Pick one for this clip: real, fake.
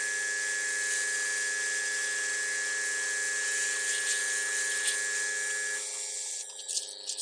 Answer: real